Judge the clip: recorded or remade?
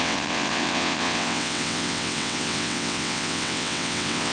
remade